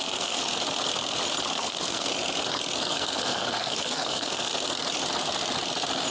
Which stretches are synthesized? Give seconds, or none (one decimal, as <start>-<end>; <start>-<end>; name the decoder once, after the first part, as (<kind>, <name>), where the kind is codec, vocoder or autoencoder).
0.0-0.5 (codec, SNAC); 1.5-2.1; 2.9-4.5